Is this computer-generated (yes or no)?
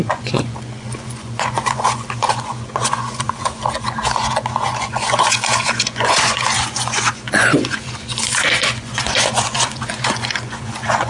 yes